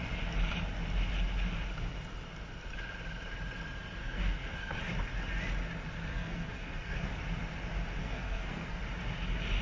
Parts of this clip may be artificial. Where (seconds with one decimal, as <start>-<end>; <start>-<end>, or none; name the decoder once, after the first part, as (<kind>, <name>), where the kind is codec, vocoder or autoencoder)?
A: 4.0-4.8 (codec, SNAC); 6.1-7.1; 8.0-8.8